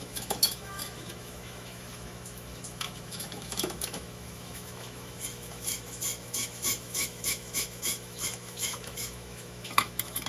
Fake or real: fake